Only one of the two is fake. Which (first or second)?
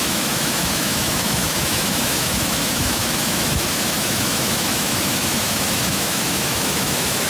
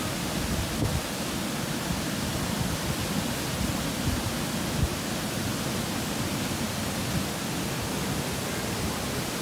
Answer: first